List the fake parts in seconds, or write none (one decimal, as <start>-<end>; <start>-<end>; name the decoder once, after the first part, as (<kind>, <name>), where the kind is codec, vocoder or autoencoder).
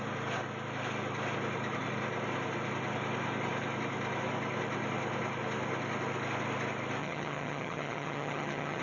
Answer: 7.0-8.8 (vocoder, HiFi-GAN)